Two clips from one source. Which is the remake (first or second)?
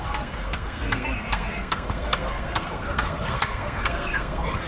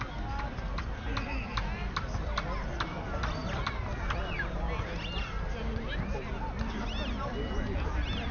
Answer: first